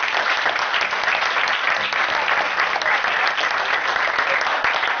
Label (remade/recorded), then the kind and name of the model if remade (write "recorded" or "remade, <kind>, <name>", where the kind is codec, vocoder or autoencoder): recorded